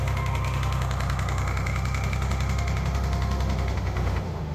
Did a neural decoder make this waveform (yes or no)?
yes